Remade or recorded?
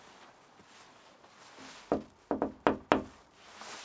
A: recorded